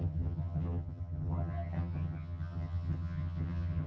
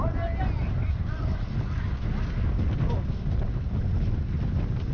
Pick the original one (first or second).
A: second